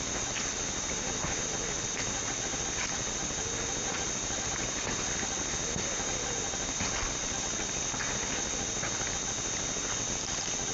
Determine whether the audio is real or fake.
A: real